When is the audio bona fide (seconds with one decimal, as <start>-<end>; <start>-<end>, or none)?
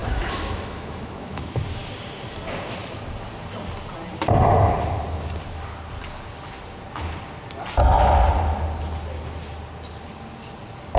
1.6-11.0